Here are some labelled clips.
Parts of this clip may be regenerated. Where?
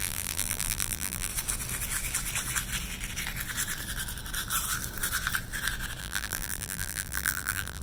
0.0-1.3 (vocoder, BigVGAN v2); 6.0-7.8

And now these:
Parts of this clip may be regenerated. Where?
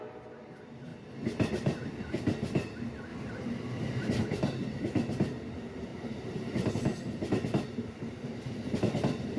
3.1-4.2 (vocoder, BigVGAN v2); 5.9-6.7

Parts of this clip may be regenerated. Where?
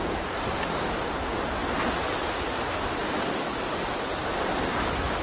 0.0-1.6 (vocoder, BigVGAN v2); 2.4-3.0; 3.9-5.2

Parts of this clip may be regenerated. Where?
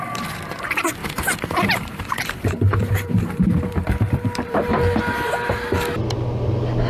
1.0-5.0 (vocoder, BigVGAN v2)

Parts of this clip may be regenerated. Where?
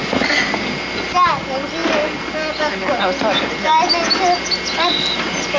none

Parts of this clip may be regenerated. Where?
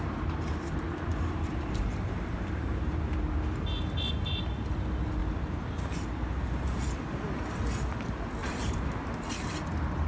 1.1-3.2 (vocoder, BigVGAN v2); 5.2-7.2; 8.4-9.2